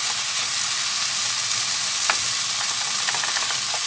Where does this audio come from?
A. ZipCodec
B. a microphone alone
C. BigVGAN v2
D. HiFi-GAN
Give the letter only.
B